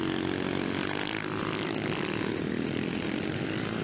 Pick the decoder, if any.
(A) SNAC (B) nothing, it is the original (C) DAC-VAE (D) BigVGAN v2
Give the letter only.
B